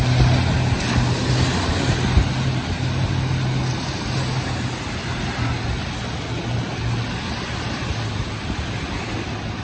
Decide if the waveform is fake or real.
real